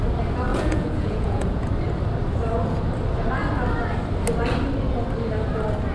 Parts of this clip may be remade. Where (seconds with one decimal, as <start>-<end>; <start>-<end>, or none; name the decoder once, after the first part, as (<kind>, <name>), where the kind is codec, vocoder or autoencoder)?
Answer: 0.5-1.7 (vocoder, Vocos)